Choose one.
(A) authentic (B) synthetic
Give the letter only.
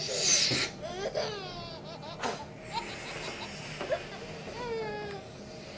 A